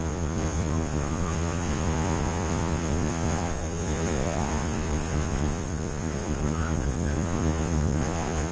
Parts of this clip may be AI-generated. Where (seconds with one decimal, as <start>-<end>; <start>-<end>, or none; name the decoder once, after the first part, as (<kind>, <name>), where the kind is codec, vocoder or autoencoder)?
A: 0.0-8.5 (vocoder, Vocos)